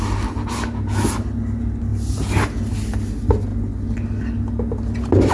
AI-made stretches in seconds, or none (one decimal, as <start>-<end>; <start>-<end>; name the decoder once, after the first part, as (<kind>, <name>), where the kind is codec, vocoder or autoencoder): none